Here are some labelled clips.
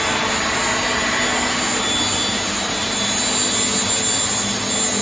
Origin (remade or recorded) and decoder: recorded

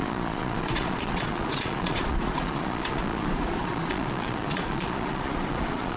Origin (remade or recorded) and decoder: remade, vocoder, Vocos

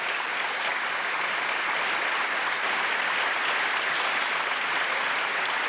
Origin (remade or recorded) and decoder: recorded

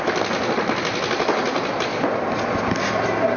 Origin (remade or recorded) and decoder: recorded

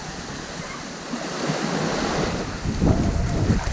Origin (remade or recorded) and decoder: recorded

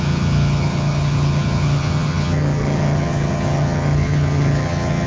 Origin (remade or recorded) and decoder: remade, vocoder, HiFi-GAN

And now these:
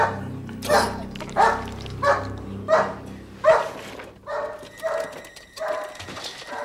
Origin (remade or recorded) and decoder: recorded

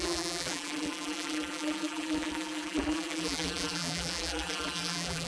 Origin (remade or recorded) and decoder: remade, vocoder, BigVGAN v2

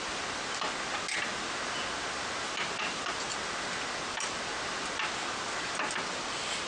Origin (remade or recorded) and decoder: recorded